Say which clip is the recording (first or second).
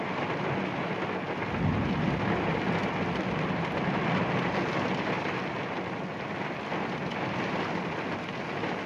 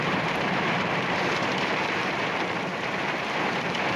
first